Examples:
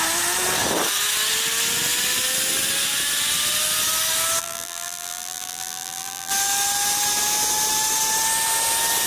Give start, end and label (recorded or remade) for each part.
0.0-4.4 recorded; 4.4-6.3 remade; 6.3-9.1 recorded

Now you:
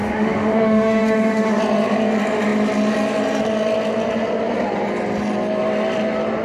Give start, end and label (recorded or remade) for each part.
0.0-1.6 remade; 1.6-6.4 recorded

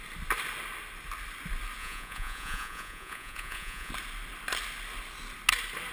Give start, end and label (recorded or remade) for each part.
0.0-1.8 recorded; 1.8-3.9 remade; 3.9-5.9 recorded

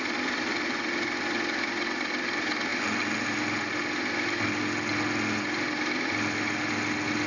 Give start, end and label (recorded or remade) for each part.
0.0-7.3 recorded

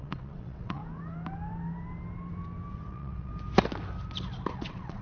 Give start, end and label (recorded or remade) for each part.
0.0-0.8 remade; 0.8-2.7 recorded; 2.7-3.3 remade; 3.3-4.5 recorded; 4.5-5.0 remade